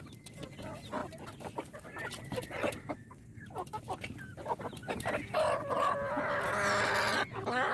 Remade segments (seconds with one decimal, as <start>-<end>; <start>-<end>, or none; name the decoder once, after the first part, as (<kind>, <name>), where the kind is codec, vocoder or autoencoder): 2.8-3.4 (codec, SNAC)